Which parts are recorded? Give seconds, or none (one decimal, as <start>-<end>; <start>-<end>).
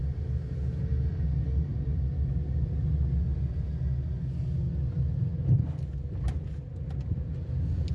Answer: 0.0-7.9